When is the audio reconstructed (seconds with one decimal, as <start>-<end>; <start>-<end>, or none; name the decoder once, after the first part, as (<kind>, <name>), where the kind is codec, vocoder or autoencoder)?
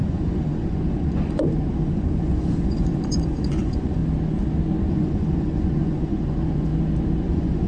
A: 0.0-4.0 (vocoder, Vocos); 4.9-6.7; 7.3-7.7